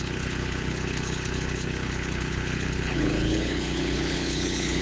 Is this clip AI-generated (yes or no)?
yes